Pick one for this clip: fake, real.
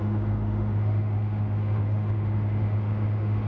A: fake